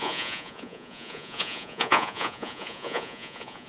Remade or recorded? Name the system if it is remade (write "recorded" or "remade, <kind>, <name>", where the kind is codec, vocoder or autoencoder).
remade, vocoder, Vocos